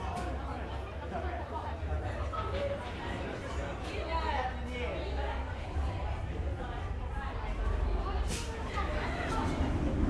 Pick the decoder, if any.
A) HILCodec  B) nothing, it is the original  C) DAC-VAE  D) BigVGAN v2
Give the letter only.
B